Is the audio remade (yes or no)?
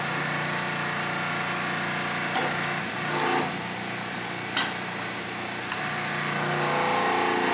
no